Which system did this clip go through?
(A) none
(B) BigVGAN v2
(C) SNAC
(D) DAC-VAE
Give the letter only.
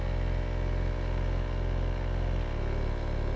A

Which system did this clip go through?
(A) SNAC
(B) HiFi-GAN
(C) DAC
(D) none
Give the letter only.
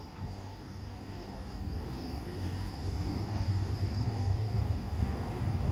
C